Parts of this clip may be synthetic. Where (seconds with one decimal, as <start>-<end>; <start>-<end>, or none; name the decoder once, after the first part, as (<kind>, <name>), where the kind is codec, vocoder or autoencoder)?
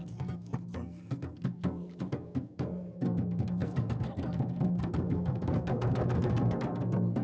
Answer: 0.0-7.2 (codec, SNAC)